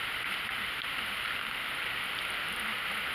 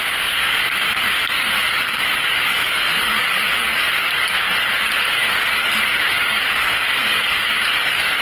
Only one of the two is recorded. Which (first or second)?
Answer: first